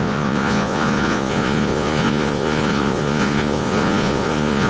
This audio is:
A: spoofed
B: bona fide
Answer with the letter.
A